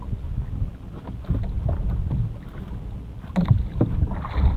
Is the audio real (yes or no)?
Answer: yes